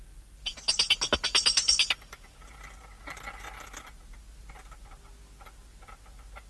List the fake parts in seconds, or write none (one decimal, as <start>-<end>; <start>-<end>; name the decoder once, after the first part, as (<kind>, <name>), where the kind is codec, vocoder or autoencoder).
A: none

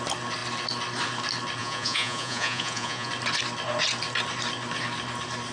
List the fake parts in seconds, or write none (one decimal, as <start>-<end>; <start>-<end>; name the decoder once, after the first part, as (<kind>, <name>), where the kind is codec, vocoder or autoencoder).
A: 1.6-3.1 (vocoder, Vocos)

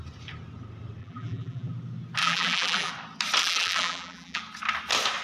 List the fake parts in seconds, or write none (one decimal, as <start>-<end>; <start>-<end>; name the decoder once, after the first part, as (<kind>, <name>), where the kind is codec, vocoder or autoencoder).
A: 1.0-1.7 (vocoder, BigVGAN v2); 2.2-2.9; 3.4-4.4

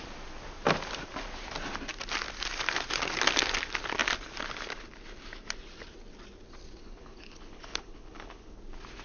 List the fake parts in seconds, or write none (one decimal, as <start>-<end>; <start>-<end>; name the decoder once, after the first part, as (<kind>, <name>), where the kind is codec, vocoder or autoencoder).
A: 6.8-8.6 (codec, HILCodec)